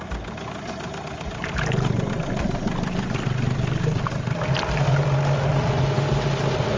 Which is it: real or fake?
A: real